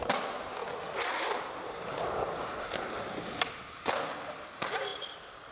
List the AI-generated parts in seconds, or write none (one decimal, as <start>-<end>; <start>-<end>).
none